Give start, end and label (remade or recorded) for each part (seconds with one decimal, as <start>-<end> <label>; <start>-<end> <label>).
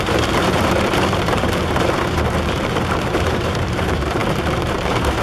0.0-5.2 remade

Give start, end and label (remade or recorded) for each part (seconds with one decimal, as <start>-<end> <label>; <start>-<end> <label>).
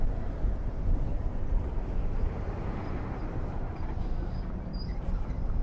0.0-1.1 recorded; 1.1-4.0 remade; 4.0-4.7 recorded; 4.7-5.6 remade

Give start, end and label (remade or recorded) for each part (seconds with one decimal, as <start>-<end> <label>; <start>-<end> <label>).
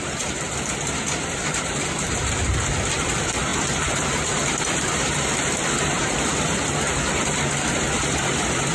0.0-8.7 remade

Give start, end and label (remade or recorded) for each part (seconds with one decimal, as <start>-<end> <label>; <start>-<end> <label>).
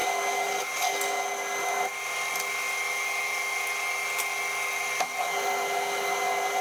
0.0-6.6 recorded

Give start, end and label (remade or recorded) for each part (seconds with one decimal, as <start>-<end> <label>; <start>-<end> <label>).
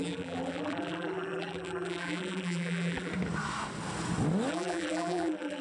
0.0-3.1 remade; 3.1-4.5 recorded; 4.5-5.6 remade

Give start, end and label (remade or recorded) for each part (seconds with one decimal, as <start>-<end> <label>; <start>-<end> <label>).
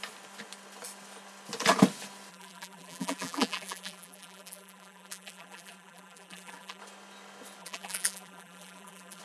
0.0-2.3 recorded; 2.3-6.8 remade; 6.8-7.6 recorded; 7.6-9.2 remade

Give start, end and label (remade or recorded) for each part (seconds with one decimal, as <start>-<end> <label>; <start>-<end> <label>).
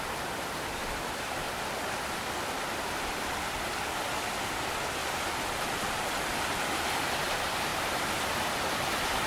0.0-9.3 recorded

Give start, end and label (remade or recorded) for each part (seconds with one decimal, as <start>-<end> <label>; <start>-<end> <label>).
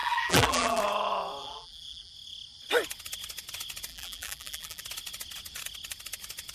0.0-0.8 remade; 0.8-1.4 recorded; 1.4-2.1 remade; 2.1-3.9 recorded; 3.9-4.8 remade; 4.8-6.5 recorded